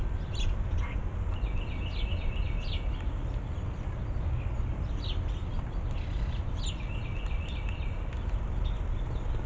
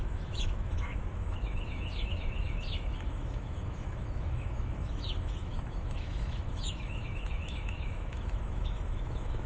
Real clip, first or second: first